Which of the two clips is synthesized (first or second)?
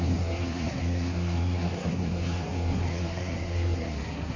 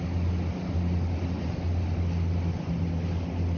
first